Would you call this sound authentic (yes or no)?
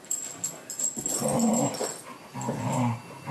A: yes